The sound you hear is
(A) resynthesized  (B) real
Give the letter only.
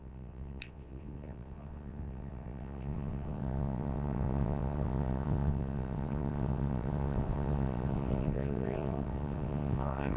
A